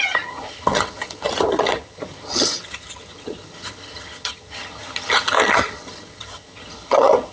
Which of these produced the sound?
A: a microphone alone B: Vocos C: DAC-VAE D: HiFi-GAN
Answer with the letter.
D